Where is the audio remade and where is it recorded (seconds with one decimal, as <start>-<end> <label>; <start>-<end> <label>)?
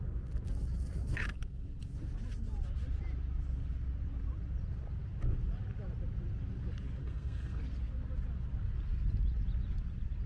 0.0-7.0 recorded; 7.0-7.6 remade; 7.6-10.3 recorded